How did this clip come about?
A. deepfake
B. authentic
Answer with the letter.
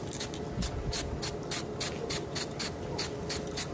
B